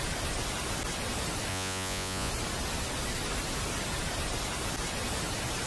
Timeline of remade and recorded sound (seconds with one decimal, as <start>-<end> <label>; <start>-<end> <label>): 0.0-1.5 recorded; 1.5-2.3 remade; 2.3-5.7 recorded